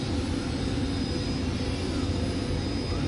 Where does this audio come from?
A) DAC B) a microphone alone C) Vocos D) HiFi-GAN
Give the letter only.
B